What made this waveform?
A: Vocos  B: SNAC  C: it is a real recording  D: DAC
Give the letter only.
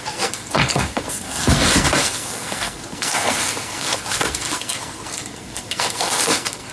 B